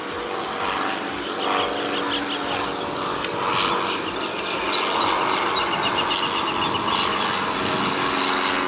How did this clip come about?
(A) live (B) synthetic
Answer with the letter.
A